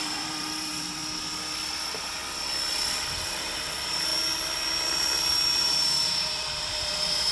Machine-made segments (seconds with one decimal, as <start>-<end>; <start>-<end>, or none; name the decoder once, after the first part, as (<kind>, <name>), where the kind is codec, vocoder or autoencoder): 0.0-1.0 (vocoder, BigVGAN v2); 1.7-2.2; 2.7-4.1; 6.0-7.3